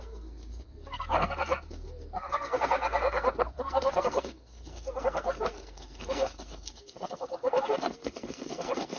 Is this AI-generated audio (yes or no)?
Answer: yes